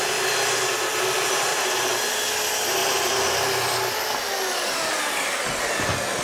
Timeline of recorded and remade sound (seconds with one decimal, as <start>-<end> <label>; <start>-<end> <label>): 0.0-1.5 recorded; 1.5-2.4 remade; 2.4-6.2 recorded